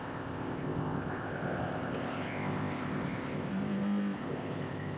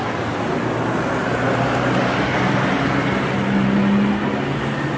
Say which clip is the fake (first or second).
first